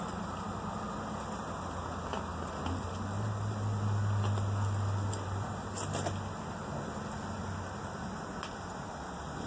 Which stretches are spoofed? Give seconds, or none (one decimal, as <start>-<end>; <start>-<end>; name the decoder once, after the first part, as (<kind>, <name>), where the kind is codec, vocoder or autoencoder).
none